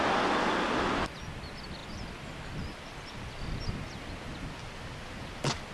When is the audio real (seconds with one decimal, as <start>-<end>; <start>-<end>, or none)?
0.0-5.7